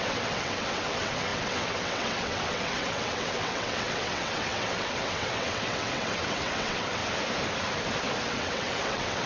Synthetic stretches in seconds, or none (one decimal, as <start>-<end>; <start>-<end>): 0.0-7.0; 8.2-9.3